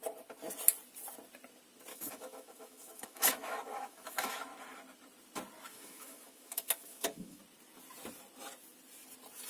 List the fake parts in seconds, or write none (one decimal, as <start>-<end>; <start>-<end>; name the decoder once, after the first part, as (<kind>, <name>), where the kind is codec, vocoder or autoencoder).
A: 1.9-4.4 (autoencoder, DAC-VAE); 5.7-7.4